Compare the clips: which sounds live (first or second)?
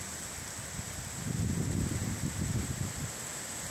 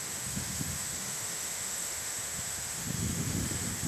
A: first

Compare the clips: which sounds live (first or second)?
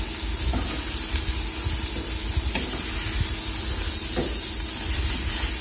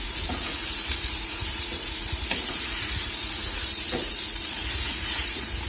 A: first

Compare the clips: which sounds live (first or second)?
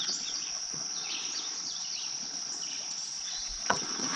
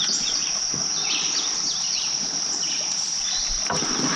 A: second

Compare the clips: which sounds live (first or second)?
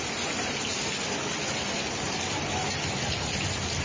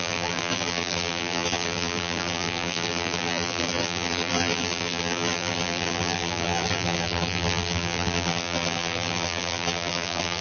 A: first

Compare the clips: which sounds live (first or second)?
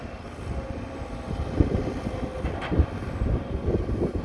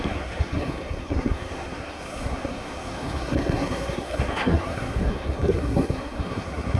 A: first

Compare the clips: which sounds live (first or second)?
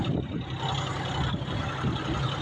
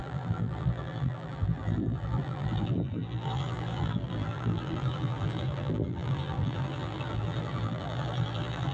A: first